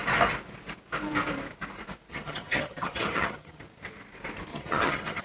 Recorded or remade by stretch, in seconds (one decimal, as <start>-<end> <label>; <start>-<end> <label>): 0.0-2.1 recorded; 2.1-3.6 remade; 3.6-4.5 recorded; 4.5-5.2 remade